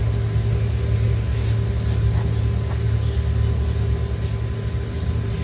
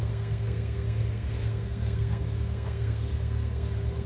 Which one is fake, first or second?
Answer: second